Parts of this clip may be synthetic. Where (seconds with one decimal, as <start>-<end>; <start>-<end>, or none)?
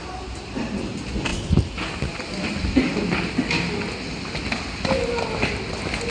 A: none